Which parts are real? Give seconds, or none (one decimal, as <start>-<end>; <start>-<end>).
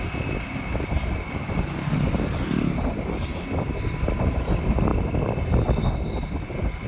0.0-6.9